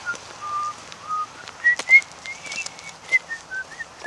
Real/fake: real